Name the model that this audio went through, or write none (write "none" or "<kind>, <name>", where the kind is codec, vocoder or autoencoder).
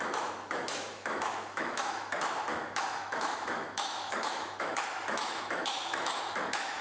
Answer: autoencoder, DAC-VAE